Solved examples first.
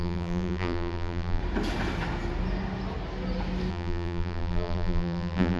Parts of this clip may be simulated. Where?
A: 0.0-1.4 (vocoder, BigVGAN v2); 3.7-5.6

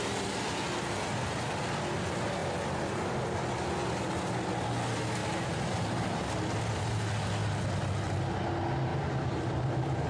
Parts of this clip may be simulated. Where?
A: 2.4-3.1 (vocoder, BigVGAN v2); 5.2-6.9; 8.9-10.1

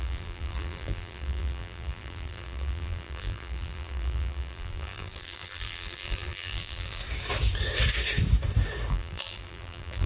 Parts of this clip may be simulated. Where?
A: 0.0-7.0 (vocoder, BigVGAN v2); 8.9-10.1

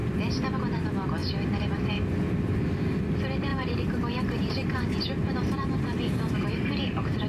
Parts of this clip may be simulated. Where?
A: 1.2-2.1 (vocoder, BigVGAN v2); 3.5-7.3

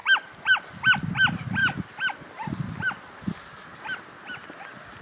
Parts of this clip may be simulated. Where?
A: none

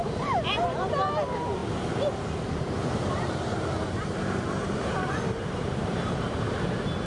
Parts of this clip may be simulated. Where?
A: 0.0-7.1 (vocoder, BigVGAN v2)